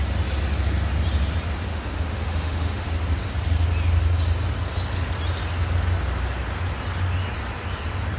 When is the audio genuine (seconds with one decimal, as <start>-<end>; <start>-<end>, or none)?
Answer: 0.0-1.7; 2.9-8.2